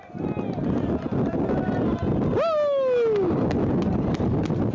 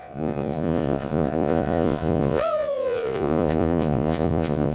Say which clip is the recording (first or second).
first